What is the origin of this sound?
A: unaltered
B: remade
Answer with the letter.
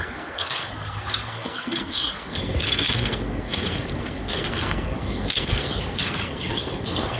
B